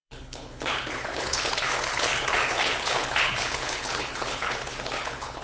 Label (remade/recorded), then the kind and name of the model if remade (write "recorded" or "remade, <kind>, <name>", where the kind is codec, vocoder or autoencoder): remade, codec, HILCodec